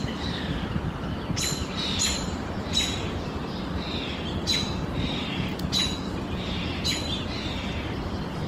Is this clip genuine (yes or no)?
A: yes